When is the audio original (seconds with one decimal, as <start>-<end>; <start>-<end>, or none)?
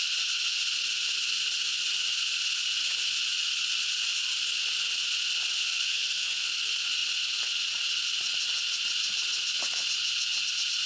0.0-5.6; 6.5-10.9